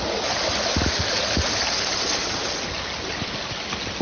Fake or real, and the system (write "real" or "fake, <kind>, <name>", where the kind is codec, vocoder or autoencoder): real